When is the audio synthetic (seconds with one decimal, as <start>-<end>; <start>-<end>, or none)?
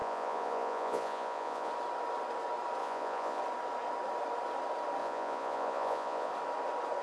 0.0-1.7; 2.8-3.4; 5.0-6.3